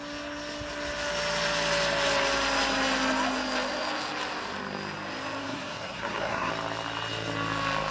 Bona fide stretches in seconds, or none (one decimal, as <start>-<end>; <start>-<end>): 0.0-5.4; 6.5-7.9